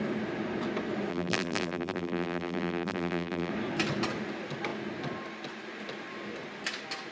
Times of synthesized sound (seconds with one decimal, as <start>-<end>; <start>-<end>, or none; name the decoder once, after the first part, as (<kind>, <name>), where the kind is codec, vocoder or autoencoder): 1.1-3.5 (vocoder, BigVGAN v2)